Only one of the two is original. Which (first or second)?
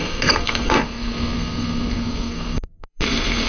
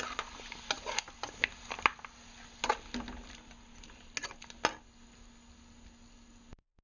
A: second